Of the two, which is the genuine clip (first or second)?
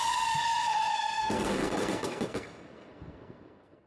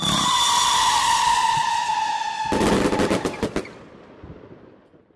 second